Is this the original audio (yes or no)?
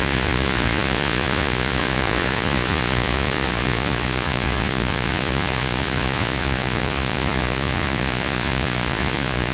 no